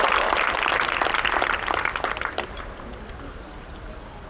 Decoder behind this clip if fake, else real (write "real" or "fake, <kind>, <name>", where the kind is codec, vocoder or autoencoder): real